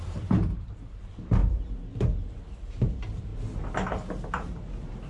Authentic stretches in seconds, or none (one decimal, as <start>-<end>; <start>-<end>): 1.4-2.9; 3.3-4.2